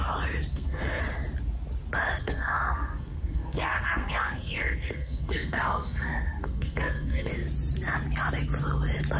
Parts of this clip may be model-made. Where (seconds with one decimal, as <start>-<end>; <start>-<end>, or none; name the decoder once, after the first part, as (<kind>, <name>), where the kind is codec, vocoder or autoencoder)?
0.5-1.0 (codec, SNAC); 2.2-7.3